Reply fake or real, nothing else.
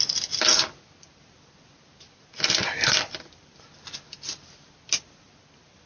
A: real